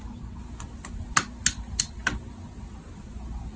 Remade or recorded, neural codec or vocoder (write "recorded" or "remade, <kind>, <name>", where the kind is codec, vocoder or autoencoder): recorded